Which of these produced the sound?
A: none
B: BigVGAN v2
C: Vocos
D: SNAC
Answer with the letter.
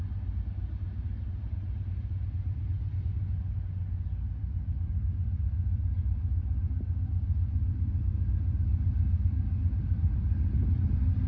A